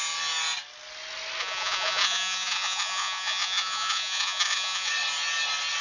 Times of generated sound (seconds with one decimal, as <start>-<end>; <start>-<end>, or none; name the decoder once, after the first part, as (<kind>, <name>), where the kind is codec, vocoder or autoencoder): 1.4-4.9 (vocoder, Vocos)